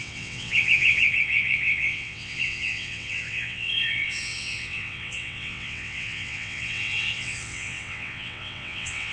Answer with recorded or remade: remade